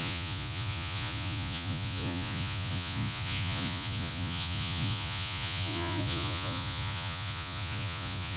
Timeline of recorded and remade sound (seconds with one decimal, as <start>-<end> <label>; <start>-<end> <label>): 0.0-8.4 remade